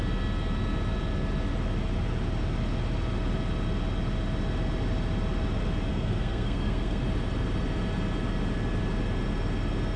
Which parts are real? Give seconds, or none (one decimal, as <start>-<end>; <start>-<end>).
0.0-5.9; 7.0-10.0